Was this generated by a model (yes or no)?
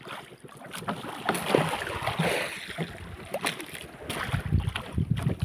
no